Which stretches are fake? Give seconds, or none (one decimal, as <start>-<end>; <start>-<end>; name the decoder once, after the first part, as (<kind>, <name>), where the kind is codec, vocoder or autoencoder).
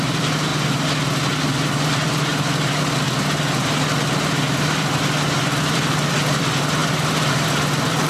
0.0-0.5 (vocoder, BigVGAN v2); 1.5-2.3; 4.7-8.1